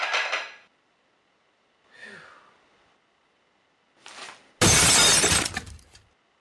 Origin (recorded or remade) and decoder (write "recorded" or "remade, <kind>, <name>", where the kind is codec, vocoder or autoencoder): recorded